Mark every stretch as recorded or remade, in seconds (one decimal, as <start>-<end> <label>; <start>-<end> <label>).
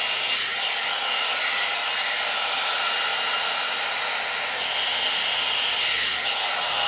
0.0-6.9 recorded